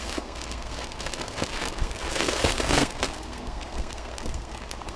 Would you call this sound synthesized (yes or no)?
yes